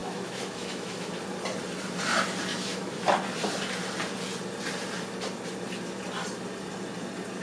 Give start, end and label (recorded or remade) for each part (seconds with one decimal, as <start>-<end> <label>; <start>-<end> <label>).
0.0-1.1 remade; 1.1-2.5 recorded; 2.5-3.0 remade; 3.0-7.4 recorded

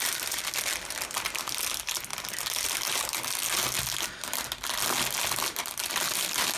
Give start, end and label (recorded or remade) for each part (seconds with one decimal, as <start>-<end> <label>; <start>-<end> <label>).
0.0-6.6 recorded

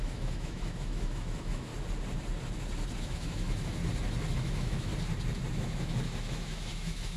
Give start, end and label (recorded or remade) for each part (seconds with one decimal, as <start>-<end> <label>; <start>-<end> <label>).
0.0-1.7 remade; 1.7-3.0 recorded; 3.0-3.8 remade; 3.8-4.3 recorded; 4.3-4.9 remade; 4.9-5.5 recorded; 5.5-7.2 remade

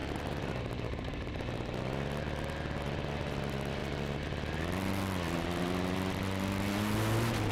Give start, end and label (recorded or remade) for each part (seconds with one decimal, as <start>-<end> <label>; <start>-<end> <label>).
0.0-0.6 remade; 0.6-7.5 recorded

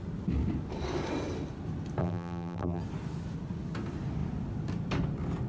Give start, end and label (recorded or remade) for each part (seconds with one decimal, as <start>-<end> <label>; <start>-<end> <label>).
0.0-2.0 recorded; 2.0-2.8 remade; 2.8-5.5 recorded